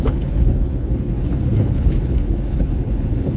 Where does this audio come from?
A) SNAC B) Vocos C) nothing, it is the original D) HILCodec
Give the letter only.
D